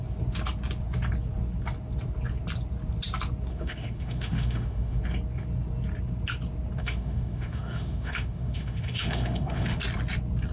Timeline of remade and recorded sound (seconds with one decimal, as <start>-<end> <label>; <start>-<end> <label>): 0.0-3.5 recorded; 3.5-5.0 remade; 5.0-6.8 recorded; 6.8-9.8 remade; 9.8-10.5 recorded